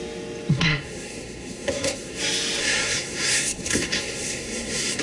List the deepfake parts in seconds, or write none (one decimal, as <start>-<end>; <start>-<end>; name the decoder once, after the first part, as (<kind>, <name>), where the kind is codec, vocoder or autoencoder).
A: 0.5-2.2 (codec, SNAC); 2.6-5.0